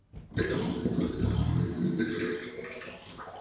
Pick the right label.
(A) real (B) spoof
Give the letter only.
A